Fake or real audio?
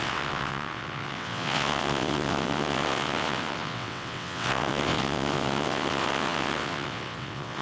fake